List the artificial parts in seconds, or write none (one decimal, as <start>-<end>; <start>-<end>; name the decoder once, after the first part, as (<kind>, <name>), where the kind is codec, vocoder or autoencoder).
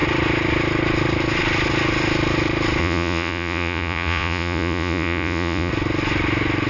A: 2.8-5.7 (vocoder, Vocos)